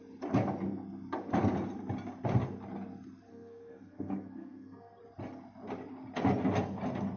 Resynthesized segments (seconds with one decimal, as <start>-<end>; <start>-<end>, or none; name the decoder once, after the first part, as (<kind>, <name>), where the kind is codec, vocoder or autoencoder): 3.3-5.0 (codec, SNAC)